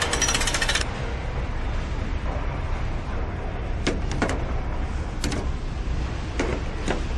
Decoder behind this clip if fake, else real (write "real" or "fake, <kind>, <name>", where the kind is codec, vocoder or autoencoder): real